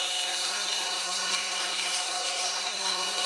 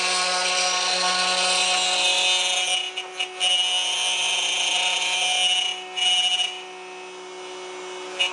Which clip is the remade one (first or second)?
first